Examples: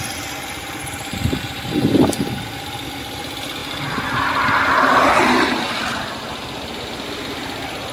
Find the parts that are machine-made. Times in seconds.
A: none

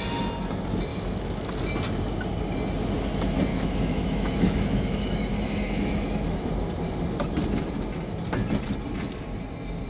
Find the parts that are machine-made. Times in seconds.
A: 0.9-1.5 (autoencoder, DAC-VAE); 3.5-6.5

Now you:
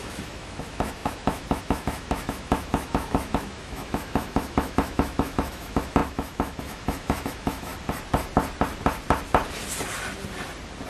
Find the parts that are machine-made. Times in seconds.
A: 0.0-7.7 (autoencoder, DAC-VAE)